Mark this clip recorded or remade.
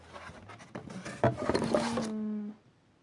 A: recorded